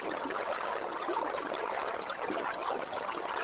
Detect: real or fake fake